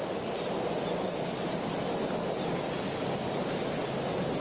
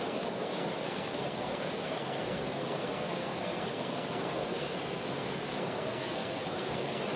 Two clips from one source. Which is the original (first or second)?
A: first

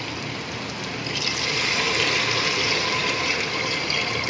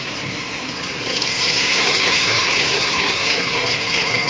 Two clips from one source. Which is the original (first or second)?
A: first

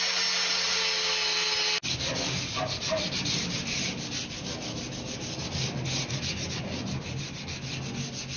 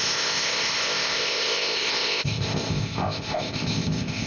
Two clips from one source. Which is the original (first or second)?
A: first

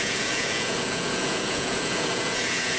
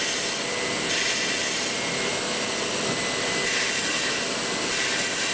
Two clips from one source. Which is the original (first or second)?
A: second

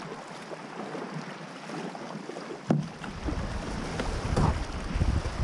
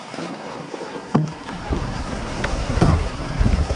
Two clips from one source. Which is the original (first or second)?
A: first